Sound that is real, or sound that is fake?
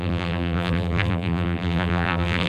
fake